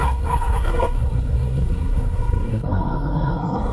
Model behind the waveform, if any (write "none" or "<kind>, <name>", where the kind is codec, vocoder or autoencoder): codec, SNAC